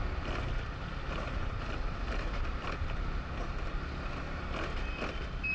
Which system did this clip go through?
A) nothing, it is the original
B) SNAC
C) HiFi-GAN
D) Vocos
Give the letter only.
A